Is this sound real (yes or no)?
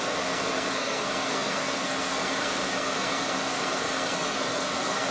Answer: no